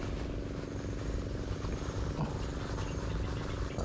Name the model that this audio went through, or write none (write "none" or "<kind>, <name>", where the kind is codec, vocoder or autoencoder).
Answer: none